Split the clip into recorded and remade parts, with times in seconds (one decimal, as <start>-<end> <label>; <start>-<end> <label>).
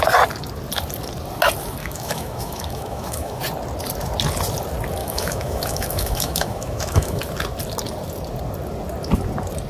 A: 0.0-1.8 recorded; 1.8-3.4 remade; 3.4-5.0 recorded; 5.0-7.2 remade; 7.2-9.7 recorded